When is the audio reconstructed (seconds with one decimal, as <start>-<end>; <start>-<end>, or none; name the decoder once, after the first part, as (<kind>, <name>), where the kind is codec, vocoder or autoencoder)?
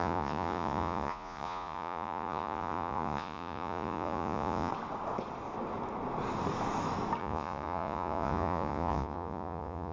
0.0-4.7 (vocoder, Vocos); 7.2-9.9